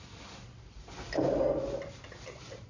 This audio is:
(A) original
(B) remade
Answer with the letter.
A